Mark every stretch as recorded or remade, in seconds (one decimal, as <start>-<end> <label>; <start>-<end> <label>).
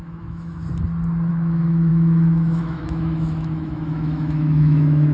0.0-0.6 remade; 0.6-1.3 recorded; 1.3-5.1 remade